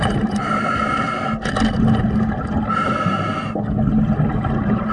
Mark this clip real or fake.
real